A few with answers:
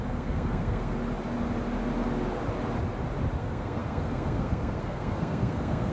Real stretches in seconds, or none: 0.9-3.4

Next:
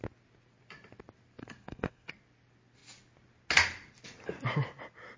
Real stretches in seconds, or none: 0.0-1.4; 2.1-5.2

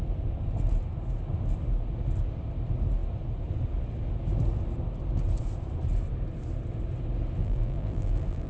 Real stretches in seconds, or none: 0.0-7.4